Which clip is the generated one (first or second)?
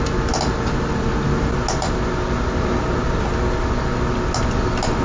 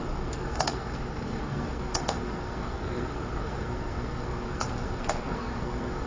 second